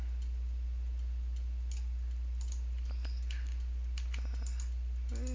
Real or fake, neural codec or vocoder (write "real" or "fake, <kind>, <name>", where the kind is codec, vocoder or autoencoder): real